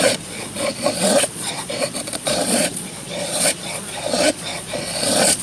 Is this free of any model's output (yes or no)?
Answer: no